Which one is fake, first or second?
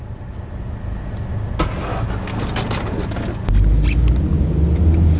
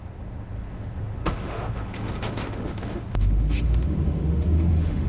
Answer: second